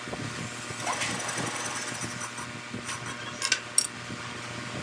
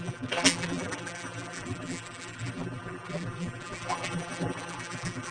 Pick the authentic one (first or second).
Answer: first